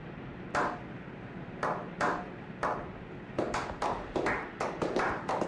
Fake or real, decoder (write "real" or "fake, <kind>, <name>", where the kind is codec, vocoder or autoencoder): real